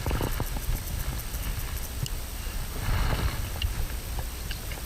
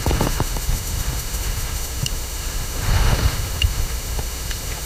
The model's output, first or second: second